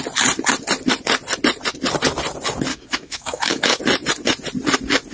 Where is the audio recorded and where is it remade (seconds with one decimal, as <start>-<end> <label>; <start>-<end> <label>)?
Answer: 0.0-2.7 recorded; 2.7-3.8 remade; 3.8-5.1 recorded